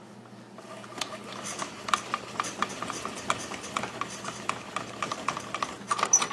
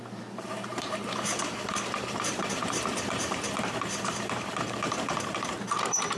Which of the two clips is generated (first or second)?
second